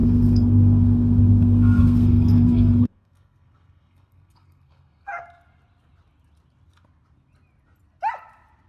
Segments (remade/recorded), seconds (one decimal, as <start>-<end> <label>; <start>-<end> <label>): 0.0-5.2 remade; 5.2-8.7 recorded